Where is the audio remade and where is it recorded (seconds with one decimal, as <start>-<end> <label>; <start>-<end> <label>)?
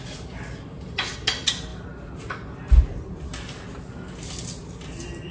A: 0.0-5.3 recorded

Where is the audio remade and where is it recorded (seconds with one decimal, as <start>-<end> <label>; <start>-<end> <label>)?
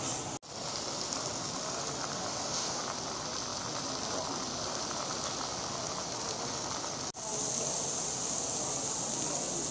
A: 0.0-2.3 recorded; 2.3-2.8 remade; 2.8-9.7 recorded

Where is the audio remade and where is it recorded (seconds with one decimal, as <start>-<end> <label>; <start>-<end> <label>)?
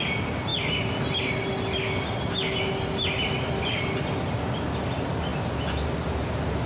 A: 0.0-6.7 recorded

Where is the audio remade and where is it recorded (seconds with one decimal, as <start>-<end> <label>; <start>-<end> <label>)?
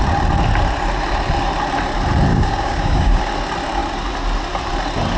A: 0.0-2.3 recorded; 2.3-3.2 remade; 3.2-5.2 recorded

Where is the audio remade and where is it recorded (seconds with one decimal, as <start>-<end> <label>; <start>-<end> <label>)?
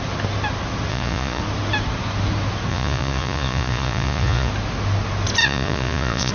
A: 0.0-0.9 recorded; 0.9-1.4 remade; 1.4-2.7 recorded; 2.7-4.5 remade; 4.5-5.4 recorded; 5.4-6.3 remade